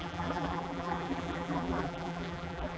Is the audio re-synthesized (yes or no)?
yes